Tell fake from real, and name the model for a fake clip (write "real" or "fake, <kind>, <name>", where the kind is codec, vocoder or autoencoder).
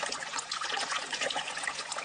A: fake, vocoder, Vocos